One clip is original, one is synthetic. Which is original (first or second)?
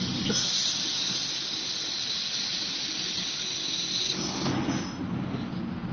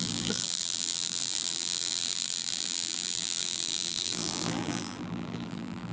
first